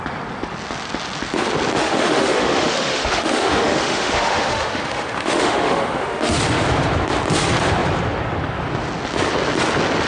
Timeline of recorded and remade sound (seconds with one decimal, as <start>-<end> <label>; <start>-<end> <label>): 0.0-1.8 recorded; 1.8-6.4 remade; 6.4-10.1 recorded